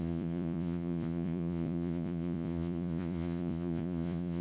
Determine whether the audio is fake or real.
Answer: fake